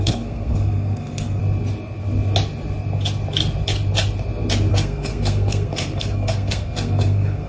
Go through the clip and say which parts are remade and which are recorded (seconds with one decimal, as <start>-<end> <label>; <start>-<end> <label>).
0.0-1.4 remade; 1.4-4.7 recorded; 4.7-7.5 remade